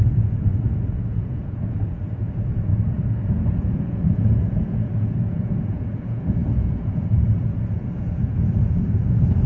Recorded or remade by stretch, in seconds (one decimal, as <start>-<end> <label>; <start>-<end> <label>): 0.0-9.5 remade